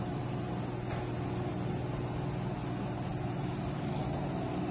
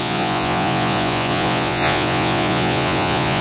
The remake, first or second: second